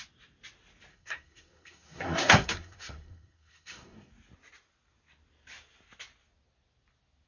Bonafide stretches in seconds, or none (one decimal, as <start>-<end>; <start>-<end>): 0.0-0.9; 4.1-7.3